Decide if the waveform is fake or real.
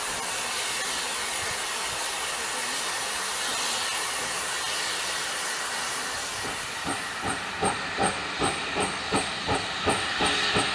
real